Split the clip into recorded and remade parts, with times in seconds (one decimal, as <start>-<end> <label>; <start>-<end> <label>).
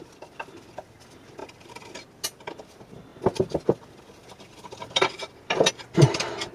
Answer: 0.0-6.5 recorded